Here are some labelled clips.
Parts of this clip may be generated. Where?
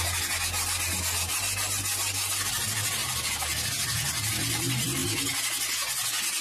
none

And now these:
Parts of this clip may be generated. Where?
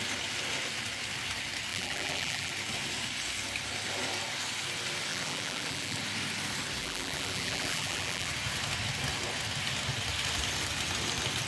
1.7-2.5 (vocoder, BigVGAN v2); 5.1-6.0; 6.8-8.3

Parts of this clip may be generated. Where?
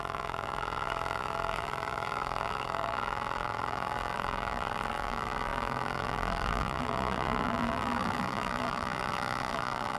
0.0-10.0 (vocoder, BigVGAN v2)